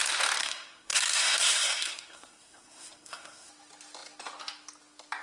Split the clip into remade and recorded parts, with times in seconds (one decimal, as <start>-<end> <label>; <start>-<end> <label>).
0.0-0.4 recorded; 0.4-3.5 remade; 3.5-5.2 recorded